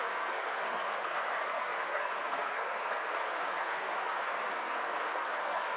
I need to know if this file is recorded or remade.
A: remade